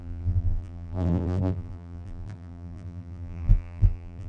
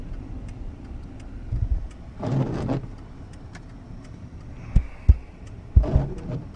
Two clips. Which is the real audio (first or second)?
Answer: second